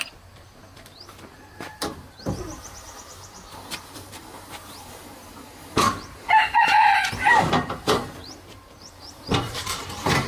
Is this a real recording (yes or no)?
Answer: no